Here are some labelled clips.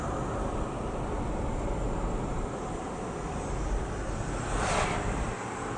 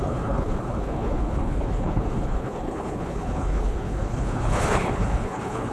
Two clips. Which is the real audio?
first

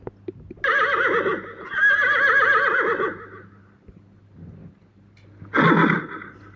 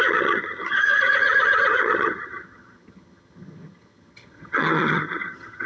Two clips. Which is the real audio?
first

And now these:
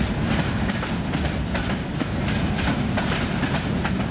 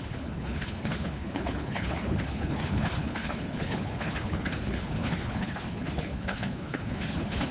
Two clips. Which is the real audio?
first